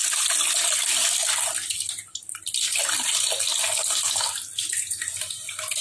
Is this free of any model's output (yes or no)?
yes